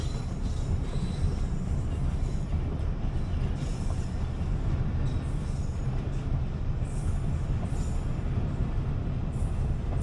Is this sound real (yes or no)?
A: yes